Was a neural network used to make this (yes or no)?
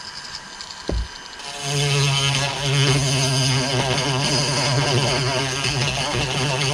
no